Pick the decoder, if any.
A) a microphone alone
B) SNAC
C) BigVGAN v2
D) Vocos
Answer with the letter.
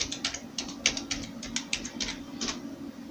A